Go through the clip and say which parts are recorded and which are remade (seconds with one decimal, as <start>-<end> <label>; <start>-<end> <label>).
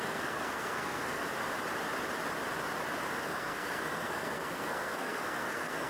0.0-1.2 remade; 1.2-3.2 recorded; 3.2-5.9 remade